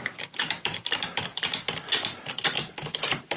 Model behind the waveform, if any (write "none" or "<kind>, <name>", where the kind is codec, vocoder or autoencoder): vocoder, BigVGAN v2